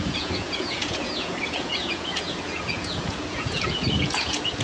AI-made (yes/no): yes